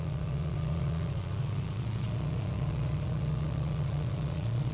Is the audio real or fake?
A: fake